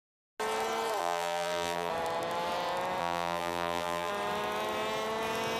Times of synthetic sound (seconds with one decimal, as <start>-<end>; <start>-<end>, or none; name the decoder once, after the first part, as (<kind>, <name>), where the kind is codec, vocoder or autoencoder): 1.0-1.9 (vocoder, BigVGAN v2); 3.0-4.1